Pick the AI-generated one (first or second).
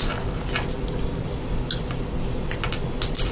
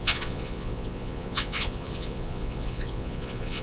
second